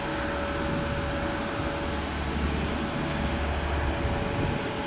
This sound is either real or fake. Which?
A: real